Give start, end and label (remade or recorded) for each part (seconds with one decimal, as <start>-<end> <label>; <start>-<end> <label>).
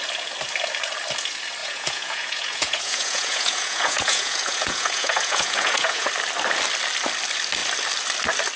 0.0-1.6 recorded; 1.6-6.1 remade; 6.1-8.6 recorded